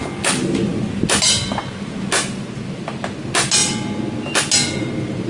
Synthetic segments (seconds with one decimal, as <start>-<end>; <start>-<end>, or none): none

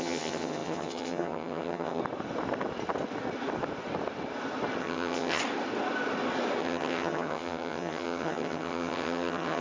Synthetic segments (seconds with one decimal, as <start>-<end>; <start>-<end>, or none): 0.0-2.0; 4.8-5.4; 6.6-9.6

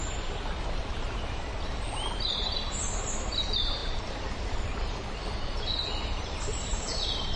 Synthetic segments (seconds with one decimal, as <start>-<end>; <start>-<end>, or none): 2.2-7.4

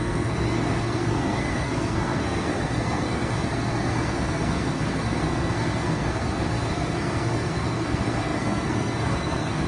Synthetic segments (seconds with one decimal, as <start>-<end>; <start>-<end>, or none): 0.0-9.7